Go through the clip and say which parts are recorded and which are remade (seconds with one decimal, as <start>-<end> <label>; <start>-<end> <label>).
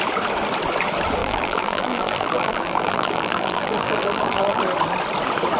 0.0-1.2 recorded; 1.2-4.6 remade; 4.6-5.6 recorded